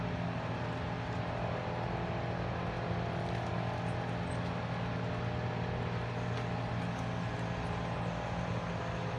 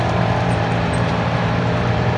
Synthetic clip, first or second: second